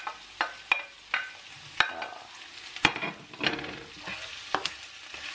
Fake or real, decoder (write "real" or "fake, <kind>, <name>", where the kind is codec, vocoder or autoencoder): real